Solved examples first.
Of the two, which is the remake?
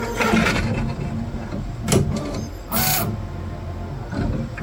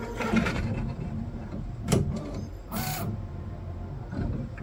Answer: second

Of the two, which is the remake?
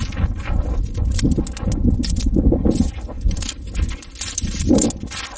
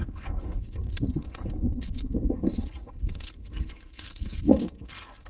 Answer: second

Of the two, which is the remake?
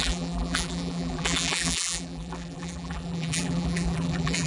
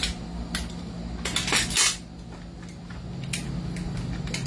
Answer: first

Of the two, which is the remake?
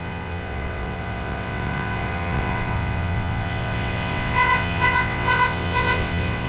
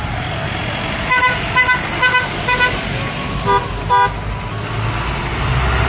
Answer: first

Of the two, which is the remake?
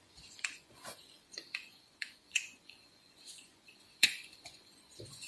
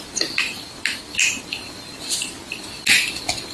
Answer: first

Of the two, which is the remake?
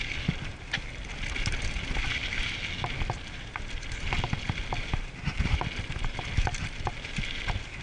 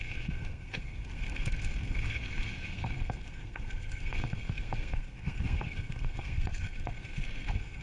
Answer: second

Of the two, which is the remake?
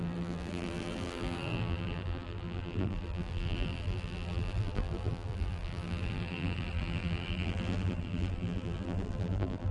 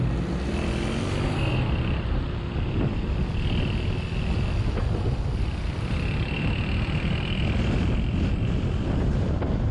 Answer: first